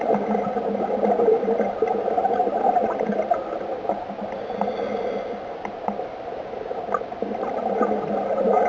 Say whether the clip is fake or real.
real